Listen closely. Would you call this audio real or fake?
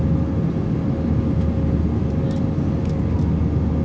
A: real